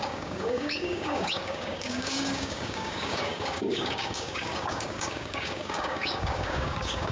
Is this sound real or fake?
fake